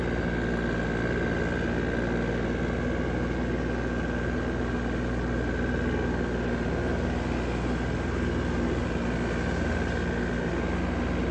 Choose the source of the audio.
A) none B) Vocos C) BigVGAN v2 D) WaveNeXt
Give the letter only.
A